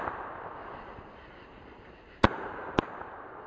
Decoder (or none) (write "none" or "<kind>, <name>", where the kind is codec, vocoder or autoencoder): vocoder, BigVGAN v2